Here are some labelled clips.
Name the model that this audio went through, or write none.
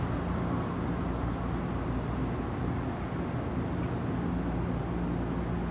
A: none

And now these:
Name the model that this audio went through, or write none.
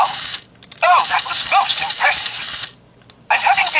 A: none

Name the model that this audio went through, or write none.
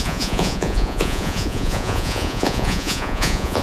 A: vocoder, Vocos